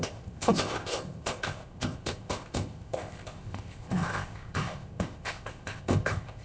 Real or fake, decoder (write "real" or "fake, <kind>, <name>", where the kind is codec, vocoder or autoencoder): fake, codec, ZipCodec